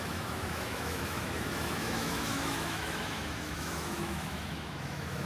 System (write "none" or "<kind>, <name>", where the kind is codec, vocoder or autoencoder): autoencoder, DAC-VAE